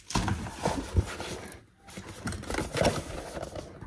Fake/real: real